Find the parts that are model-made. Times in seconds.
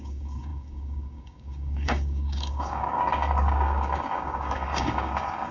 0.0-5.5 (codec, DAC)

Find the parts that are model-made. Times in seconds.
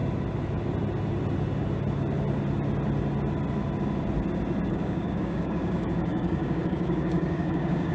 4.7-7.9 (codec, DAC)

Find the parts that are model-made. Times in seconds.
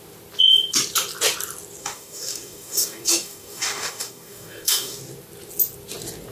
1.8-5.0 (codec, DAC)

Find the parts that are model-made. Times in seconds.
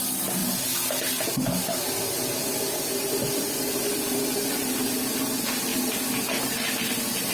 none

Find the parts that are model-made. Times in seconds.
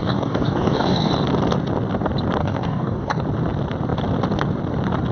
0.0-1.1 (codec, DAC); 2.4-3.2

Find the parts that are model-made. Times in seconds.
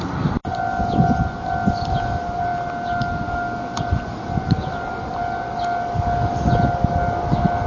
none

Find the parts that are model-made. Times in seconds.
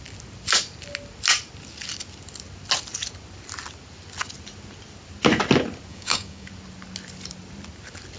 5.9-6.5 (codec, DAC)